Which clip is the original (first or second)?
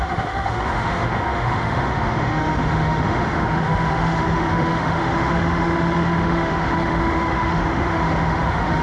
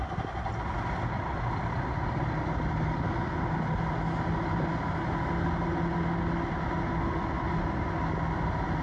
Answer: second